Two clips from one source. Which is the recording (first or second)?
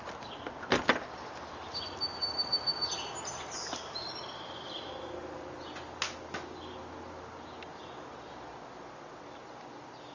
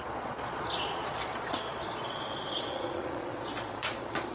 first